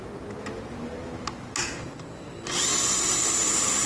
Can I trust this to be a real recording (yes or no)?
yes